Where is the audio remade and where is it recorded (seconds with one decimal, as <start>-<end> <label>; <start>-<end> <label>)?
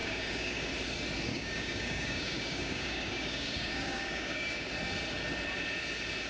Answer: 0.0-0.7 remade; 0.7-1.3 recorded; 1.3-4.7 remade; 4.7-6.3 recorded